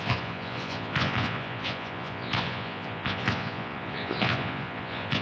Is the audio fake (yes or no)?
yes